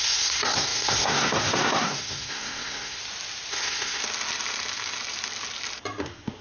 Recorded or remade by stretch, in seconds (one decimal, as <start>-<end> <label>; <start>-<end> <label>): 0.0-3.0 remade; 3.0-3.5 recorded; 3.5-4.0 remade; 4.0-6.0 recorded; 6.0-6.4 remade